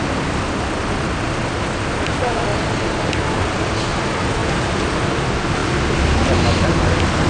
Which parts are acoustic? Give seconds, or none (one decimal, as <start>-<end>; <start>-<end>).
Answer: 0.0-2.5; 3.1-4.4; 5.0-5.6; 6.3-7.3